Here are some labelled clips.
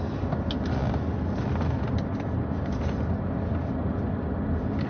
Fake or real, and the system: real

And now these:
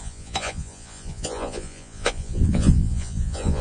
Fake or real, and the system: fake, vocoder, Vocos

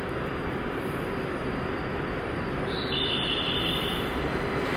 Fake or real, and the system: fake, vocoder, BigVGAN v2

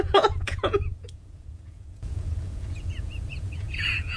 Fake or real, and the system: fake, vocoder, Vocos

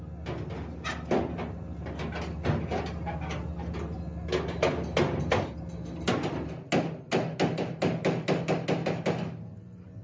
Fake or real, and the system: real